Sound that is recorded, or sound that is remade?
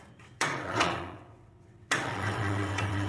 remade